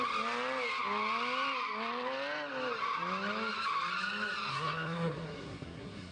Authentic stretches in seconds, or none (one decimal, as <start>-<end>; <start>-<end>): 0.0-4.5